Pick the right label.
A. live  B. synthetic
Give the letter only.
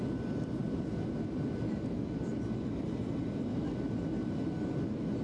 A